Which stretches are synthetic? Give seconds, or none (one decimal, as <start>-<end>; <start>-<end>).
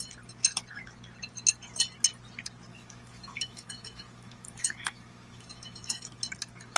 2.7-6.2